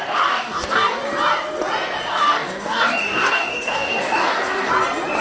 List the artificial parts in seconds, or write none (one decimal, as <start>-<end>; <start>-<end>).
0.0-1.0; 2.1-4.7